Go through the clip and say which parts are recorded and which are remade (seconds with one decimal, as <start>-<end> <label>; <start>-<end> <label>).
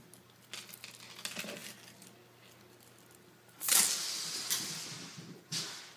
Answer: 0.0-6.0 recorded